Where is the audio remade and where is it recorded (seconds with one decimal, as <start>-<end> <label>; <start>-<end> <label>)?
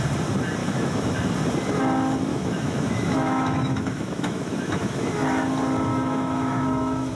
0.0-0.6 recorded; 0.6-1.3 remade; 1.3-2.3 recorded; 2.3-5.1 remade; 5.1-5.9 recorded; 5.9-7.1 remade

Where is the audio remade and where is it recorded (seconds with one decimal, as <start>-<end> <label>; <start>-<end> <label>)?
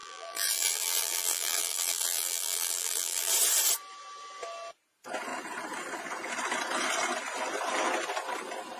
0.0-3.3 remade; 3.3-8.8 recorded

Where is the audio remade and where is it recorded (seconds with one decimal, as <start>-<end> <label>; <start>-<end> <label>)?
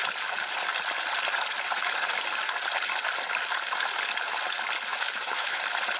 0.0-4.9 recorded; 4.9-5.6 remade; 5.6-6.0 recorded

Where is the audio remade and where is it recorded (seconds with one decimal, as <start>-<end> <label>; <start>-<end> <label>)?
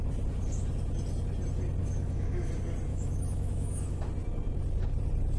0.0-1.8 recorded; 1.8-2.5 remade; 2.5-2.9 recorded; 2.9-4.0 remade; 4.0-5.4 recorded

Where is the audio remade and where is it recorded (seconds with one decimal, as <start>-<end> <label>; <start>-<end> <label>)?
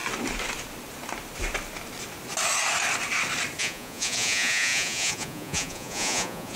0.0-3.6 recorded; 3.6-6.6 remade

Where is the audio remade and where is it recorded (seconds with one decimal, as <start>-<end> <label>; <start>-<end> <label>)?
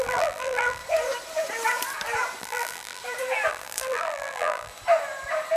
0.0-0.8 remade; 0.8-2.4 recorded; 2.4-3.0 remade; 3.0-3.5 recorded; 3.5-4.7 remade; 4.7-5.6 recorded